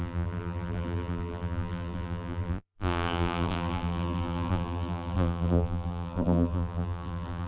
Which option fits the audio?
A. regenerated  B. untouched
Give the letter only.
A